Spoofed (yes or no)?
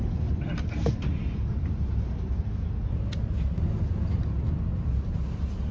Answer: no